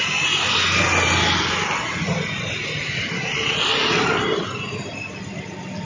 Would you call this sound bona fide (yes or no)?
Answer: yes